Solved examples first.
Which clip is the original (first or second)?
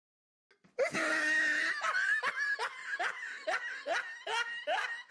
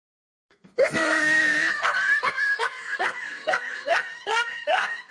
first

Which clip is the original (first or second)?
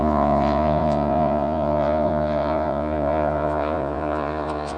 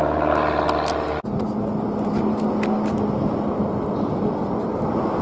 second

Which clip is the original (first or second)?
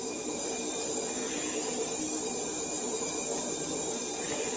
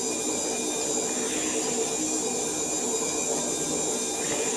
second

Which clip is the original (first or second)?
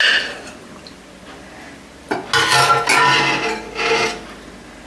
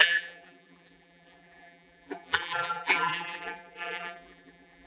first